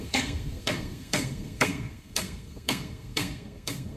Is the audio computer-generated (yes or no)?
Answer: yes